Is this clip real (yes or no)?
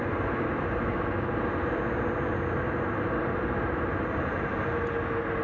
yes